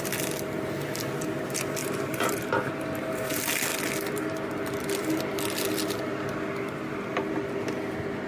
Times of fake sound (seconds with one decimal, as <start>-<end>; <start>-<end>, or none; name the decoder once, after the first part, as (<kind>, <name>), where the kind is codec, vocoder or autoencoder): 1.8-2.5 (vocoder, BigVGAN v2)